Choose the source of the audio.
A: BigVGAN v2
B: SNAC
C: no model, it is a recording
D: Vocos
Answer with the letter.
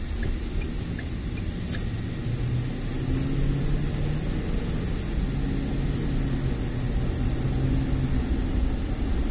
C